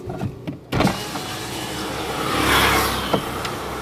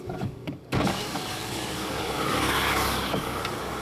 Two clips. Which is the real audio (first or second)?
first